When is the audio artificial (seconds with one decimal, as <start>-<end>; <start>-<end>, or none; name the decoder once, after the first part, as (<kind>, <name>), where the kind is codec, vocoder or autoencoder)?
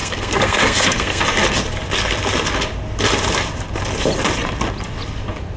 0.0-1.2 (codec, SNAC)